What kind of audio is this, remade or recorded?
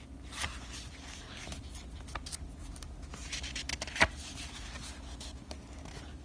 recorded